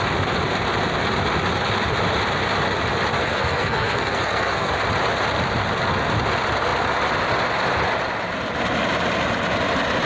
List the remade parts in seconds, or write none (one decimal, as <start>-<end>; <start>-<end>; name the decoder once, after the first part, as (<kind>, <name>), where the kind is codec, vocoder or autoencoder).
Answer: 3.2-4.7 (codec, SNAC)